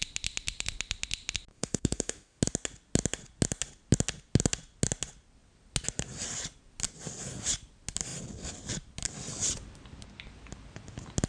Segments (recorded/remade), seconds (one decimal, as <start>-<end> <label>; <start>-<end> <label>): 0.0-1.5 recorded; 1.5-2.4 remade; 2.4-11.3 recorded